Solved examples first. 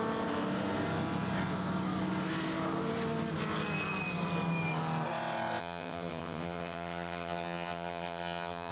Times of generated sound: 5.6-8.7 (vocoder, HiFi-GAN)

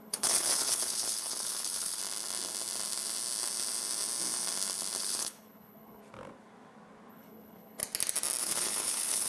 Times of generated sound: 0.0-2.0 (codec, HILCodec); 5.0-6.0; 7.1-7.8; 8.4-9.3

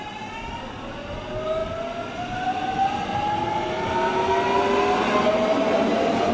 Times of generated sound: none